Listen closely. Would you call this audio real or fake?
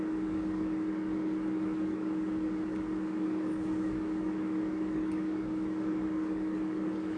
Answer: fake